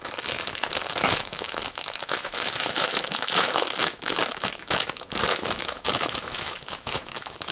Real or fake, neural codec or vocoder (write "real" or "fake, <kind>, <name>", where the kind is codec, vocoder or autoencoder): fake, autoencoder, DAC-VAE